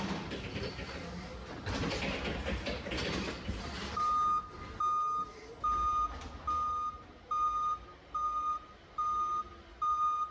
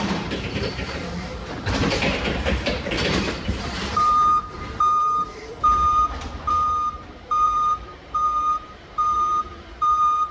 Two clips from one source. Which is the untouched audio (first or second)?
first